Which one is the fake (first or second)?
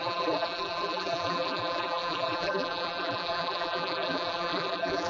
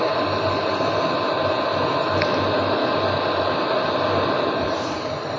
first